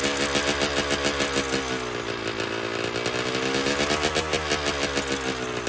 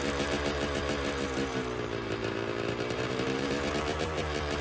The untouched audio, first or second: first